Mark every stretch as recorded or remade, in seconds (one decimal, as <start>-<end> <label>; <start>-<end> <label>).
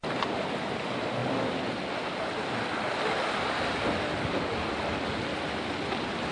0.0-6.3 recorded